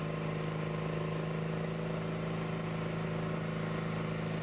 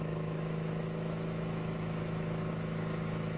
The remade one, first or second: second